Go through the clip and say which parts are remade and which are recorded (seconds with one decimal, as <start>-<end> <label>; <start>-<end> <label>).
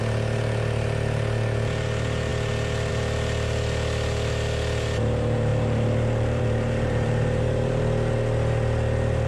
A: 0.0-5.5 recorded; 5.5-7.8 remade; 7.8-9.3 recorded